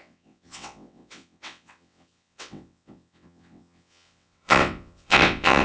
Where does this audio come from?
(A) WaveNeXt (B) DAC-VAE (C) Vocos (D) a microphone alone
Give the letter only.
A